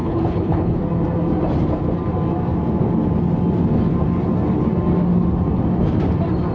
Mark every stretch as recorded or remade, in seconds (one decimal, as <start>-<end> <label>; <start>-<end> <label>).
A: 0.0-0.8 remade; 0.8-6.5 recorded